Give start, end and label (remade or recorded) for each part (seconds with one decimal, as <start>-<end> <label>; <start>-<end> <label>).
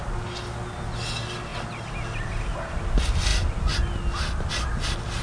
0.0-5.2 recorded